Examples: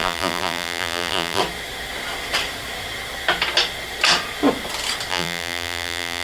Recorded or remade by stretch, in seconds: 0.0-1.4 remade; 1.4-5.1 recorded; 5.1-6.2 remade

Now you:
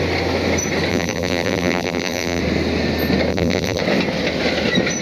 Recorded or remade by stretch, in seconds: 0.0-0.9 recorded; 0.9-2.4 remade; 2.4-3.3 recorded; 3.3-3.8 remade; 3.8-5.0 recorded

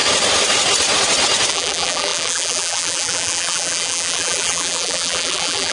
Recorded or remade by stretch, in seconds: 0.0-1.5 recorded; 1.5-5.7 remade

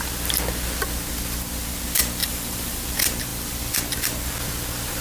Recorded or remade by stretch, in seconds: 0.0-2.2 recorded; 2.2-2.8 remade; 2.8-5.0 recorded

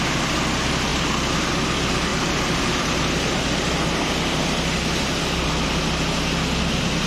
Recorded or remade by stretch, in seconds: 0.0-2.1 recorded; 2.1-3.4 remade; 3.4-7.1 recorded